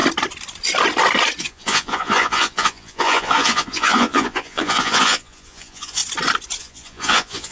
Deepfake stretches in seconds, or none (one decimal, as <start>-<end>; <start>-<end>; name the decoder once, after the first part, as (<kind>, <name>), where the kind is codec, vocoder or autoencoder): 1.4-6.0 (vocoder, Vocos); 6.6-7.5